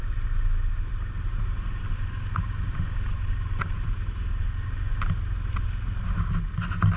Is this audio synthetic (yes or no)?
no